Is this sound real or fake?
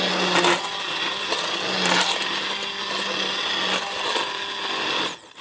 real